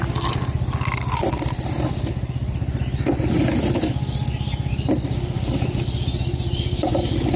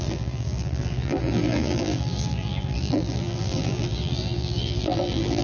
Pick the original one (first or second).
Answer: first